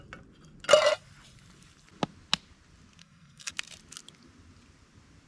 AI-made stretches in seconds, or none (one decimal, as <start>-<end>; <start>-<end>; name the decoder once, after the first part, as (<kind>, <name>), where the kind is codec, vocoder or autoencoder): 3.0-3.5 (codec, SNAC)